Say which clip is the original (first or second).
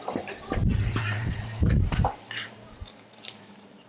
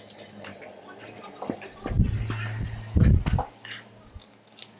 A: second